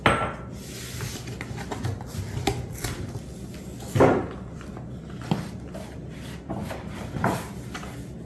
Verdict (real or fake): real